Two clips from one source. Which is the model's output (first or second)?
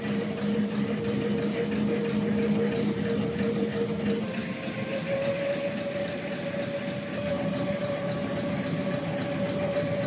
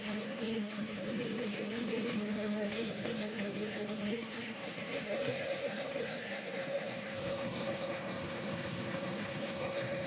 second